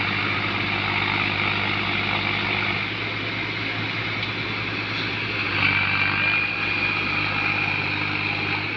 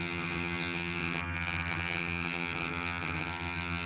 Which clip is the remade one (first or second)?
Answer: second